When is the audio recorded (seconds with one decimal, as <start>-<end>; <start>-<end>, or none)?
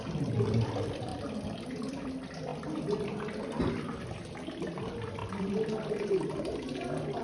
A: 1.1-1.7; 2.5-3.7